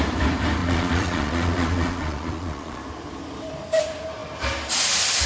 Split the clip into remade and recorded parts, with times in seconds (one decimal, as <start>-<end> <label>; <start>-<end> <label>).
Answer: 0.0-0.6 recorded; 0.6-2.8 remade; 2.8-5.3 recorded

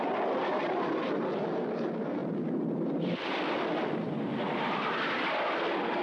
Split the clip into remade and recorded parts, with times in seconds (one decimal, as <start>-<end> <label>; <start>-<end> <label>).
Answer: 0.0-2.2 remade; 2.2-4.2 recorded; 4.2-6.0 remade

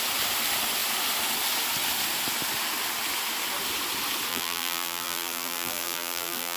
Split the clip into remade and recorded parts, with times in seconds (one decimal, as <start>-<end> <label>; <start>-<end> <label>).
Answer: 0.0-4.3 recorded; 4.3-6.6 remade